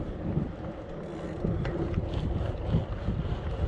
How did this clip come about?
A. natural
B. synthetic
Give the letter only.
A